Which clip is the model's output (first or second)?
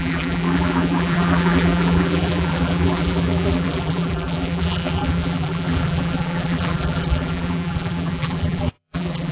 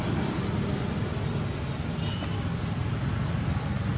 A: first